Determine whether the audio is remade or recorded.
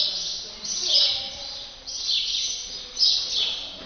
recorded